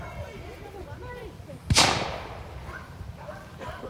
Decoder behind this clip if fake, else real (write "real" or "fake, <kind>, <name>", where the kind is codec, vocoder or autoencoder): real